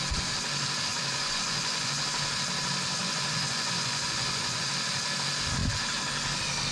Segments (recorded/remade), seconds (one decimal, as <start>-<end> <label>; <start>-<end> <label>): 0.0-0.9 recorded; 0.9-2.0 remade; 2.0-3.0 recorded; 3.0-4.7 remade; 4.7-6.7 recorded